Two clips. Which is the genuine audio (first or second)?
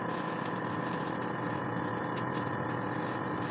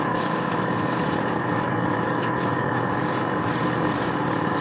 first